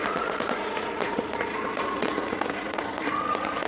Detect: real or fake fake